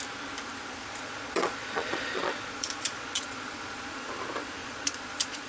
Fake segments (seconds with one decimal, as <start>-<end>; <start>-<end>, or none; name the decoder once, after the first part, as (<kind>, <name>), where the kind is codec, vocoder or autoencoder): 0.8-4.1 (vocoder, Vocos); 4.6-5.5